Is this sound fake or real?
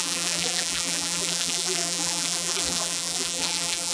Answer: fake